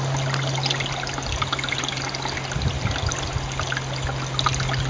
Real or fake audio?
real